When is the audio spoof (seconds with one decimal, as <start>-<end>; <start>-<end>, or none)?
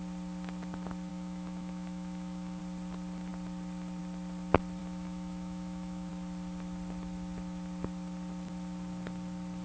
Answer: 1.1-2.6; 4.8-6.1